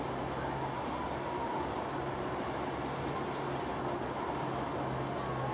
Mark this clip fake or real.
real